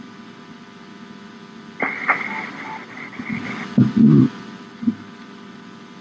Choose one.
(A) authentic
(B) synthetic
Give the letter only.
A